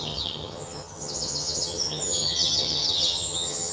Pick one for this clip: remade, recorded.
remade